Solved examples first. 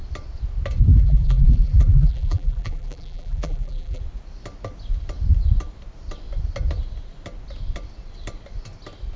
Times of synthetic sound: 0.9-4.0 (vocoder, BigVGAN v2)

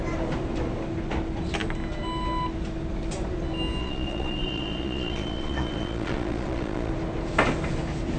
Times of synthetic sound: 3.8-6.9 (vocoder, Vocos)

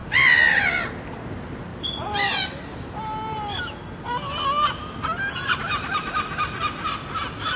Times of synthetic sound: none

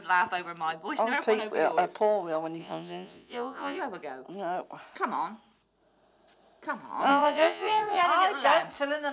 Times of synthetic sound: 2.6-3.8 (vocoder, Vocos); 7.1-8.0

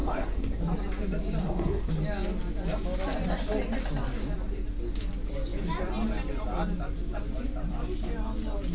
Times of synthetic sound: 0.0-0.6 (codec, SNAC); 1.4-1.9